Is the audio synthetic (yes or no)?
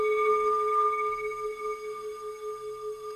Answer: yes